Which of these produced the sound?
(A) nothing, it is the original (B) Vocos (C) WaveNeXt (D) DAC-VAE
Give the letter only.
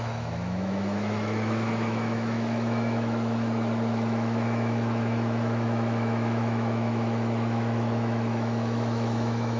D